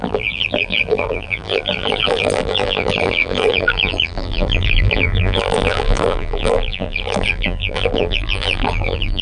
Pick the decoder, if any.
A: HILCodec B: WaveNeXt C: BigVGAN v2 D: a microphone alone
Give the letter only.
C